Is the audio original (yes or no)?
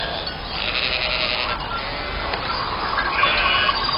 yes